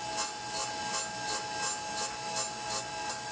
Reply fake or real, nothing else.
real